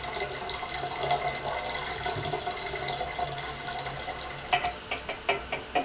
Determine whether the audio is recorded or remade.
recorded